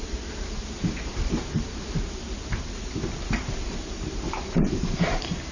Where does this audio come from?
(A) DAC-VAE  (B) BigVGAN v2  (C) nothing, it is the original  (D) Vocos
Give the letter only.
B